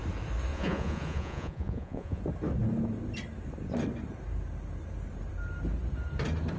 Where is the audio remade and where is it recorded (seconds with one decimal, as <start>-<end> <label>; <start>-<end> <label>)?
0.0-0.5 recorded; 0.5-2.2 remade; 2.2-6.6 recorded